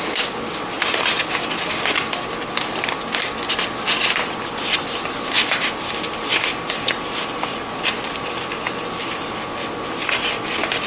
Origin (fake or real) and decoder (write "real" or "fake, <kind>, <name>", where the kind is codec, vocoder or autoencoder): real